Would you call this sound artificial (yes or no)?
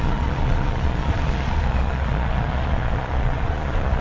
yes